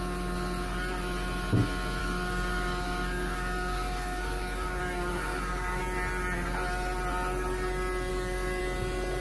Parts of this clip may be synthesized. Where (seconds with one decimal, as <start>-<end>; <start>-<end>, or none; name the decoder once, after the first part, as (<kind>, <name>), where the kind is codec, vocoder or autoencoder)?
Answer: 2.0-5.8 (codec, DAC); 8.1-8.6